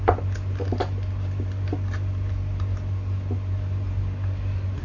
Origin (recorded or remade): recorded